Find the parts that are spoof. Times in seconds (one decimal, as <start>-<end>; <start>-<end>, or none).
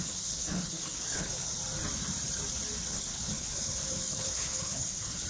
0.0-1.6; 2.9-5.3